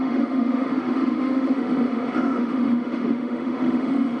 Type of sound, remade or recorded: remade